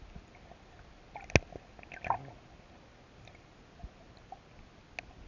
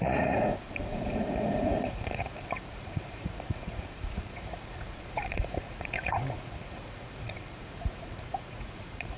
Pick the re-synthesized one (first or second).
second